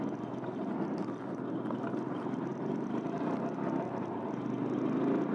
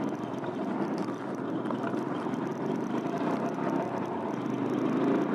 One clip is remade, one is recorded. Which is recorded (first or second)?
first